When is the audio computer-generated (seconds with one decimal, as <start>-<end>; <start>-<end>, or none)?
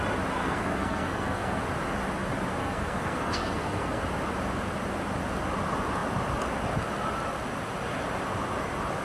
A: 0.4-1.6; 2.6-4.0